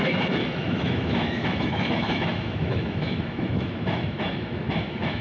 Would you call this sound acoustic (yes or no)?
no